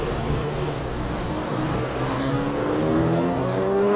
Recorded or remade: remade